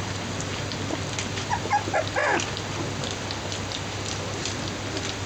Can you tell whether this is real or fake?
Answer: real